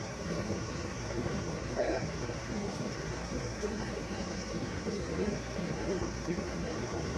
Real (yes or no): no